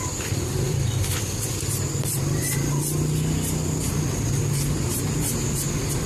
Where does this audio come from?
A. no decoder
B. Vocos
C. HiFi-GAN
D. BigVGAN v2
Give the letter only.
D